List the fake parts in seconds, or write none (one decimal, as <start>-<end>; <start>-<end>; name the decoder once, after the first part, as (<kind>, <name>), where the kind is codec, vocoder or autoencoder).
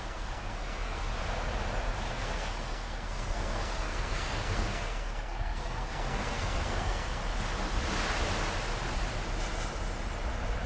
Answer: 0.0-1.1 (codec, SNAC); 2.1-7.2